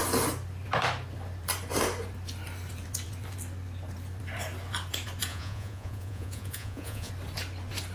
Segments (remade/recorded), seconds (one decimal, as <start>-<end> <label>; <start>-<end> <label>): 0.0-5.3 recorded; 5.3-7.1 remade; 7.1-7.9 recorded